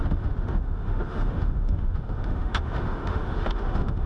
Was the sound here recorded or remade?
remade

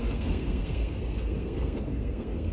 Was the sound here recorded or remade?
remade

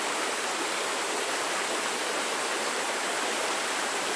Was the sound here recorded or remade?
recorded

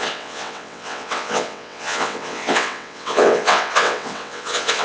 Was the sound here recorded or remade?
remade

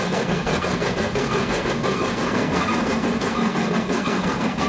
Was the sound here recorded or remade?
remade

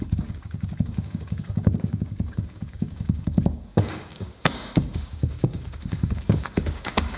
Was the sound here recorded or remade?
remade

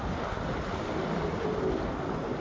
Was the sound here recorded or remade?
recorded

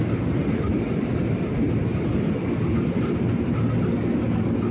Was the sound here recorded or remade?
recorded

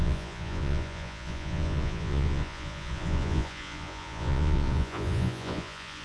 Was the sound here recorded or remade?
remade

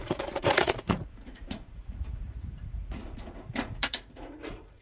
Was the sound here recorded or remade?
remade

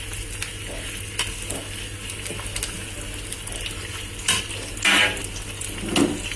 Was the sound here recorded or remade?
recorded